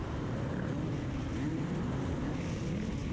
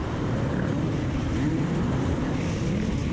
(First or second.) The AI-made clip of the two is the second